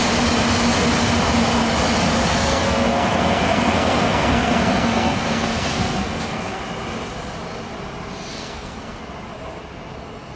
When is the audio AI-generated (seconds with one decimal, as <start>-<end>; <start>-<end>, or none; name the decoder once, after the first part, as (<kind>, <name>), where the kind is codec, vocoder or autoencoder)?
2.3-6.6 (codec, SNAC); 8.3-9.0

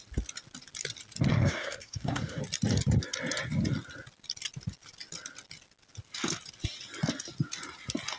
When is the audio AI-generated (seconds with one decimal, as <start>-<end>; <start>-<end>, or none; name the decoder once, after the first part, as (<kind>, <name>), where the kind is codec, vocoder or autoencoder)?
1.3-2.4 (codec, SNAC)

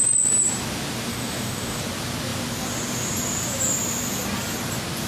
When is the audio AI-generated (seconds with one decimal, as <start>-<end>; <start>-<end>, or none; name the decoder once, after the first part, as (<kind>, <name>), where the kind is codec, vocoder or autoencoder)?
1.1-1.8 (codec, DAC)